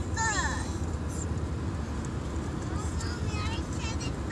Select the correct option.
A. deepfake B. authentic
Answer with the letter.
B